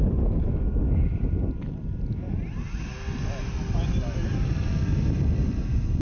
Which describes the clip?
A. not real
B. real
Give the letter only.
B